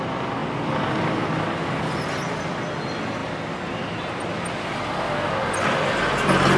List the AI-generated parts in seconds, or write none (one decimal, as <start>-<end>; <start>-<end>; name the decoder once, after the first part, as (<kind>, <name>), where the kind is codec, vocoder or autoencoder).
none